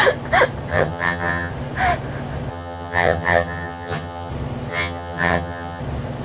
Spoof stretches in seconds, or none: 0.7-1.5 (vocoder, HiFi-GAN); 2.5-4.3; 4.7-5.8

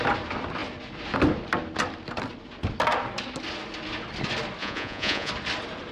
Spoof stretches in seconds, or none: 4.6-5.3 (vocoder, Vocos)

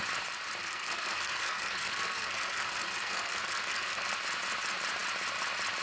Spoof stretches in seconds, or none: 0.6-4.1 (codec, SNAC)

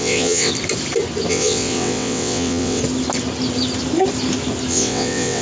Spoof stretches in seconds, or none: 0.0-0.5 (vocoder, WaveNeXt); 1.3-2.8; 4.7-5.4

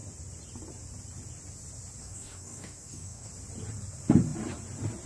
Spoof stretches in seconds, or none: 2.0-3.3 (codec, DAC)

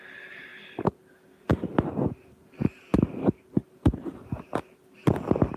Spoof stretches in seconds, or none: none